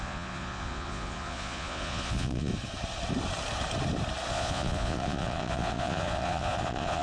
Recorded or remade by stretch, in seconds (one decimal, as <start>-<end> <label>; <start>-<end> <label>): 0.0-2.5 remade; 2.5-4.3 recorded; 4.3-7.0 remade